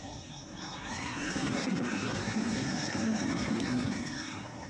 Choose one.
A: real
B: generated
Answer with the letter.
B